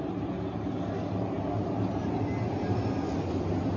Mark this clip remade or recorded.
recorded